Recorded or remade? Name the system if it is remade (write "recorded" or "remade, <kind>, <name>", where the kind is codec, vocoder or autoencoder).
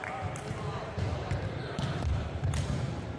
remade, vocoder, BigVGAN v2